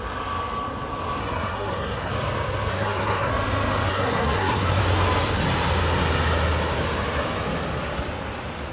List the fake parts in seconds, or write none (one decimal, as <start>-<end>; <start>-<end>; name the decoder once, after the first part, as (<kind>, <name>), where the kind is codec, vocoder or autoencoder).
1.2-2.1 (codec, SNAC); 2.7-3.3; 3.9-4.8